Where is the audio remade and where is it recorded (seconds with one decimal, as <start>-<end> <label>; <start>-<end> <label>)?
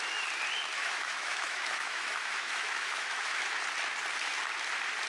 0.0-0.8 recorded; 0.8-3.5 remade; 3.5-5.1 recorded